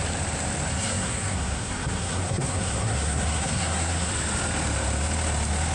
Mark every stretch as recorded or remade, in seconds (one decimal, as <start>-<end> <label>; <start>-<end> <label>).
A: 0.0-0.7 recorded; 0.7-4.1 remade; 4.1-5.7 recorded